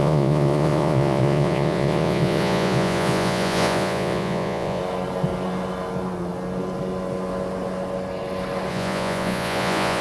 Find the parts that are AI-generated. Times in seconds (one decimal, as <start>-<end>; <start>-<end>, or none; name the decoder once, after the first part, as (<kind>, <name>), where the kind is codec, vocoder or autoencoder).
0.0-4.8 (vocoder, Vocos); 8.7-10.0